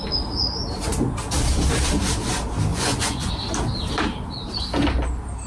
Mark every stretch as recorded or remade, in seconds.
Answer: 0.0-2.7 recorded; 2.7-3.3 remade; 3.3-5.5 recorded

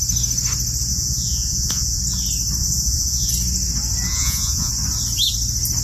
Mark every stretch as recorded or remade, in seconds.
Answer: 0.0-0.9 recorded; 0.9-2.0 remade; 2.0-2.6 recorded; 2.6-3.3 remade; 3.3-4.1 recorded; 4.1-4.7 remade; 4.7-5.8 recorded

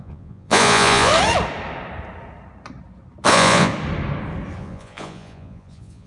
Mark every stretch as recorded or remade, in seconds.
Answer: 0.0-1.1 remade; 1.1-3.3 recorded; 3.3-3.7 remade; 3.7-4.6 recorded; 4.6-6.1 remade

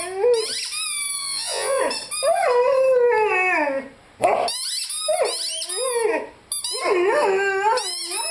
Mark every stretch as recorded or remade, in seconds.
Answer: 0.0-1.2 recorded; 1.2-1.8 remade; 1.8-8.3 recorded

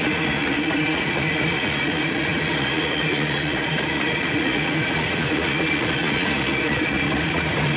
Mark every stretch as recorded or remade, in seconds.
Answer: 0.0-7.8 remade

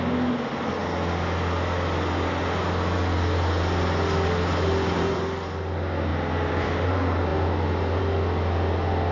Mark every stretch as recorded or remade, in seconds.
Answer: 0.0-9.1 recorded

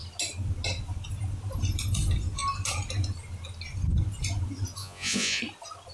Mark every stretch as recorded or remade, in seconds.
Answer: 0.0-4.8 recorded; 4.8-5.4 remade; 5.4-5.9 recorded

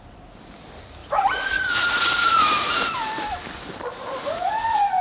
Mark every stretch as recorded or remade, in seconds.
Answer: 0.0-1.0 recorded; 1.0-2.9 remade; 2.9-4.2 recorded; 4.2-5.0 remade